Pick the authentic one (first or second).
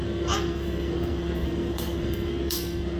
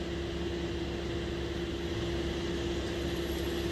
second